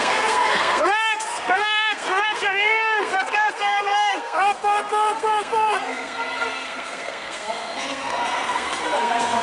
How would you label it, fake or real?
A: fake